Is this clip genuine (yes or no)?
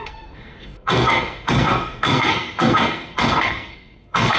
no